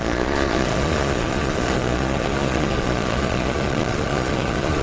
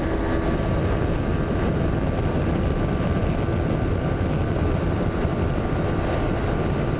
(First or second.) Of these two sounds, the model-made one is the first